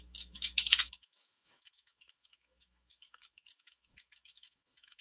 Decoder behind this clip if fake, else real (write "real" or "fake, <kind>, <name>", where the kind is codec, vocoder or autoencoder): fake, autoencoder, DAC-VAE